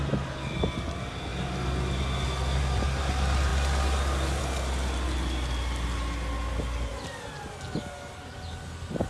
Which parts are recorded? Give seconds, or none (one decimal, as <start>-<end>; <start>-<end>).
0.0-9.1